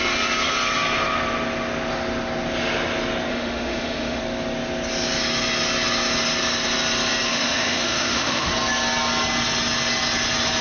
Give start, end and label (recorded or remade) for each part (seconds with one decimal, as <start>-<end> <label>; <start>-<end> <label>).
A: 0.0-3.3 recorded; 3.3-4.2 remade; 4.2-7.3 recorded; 7.3-8.5 remade; 8.5-10.6 recorded